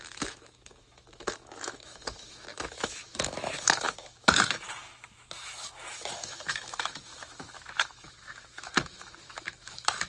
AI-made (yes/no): yes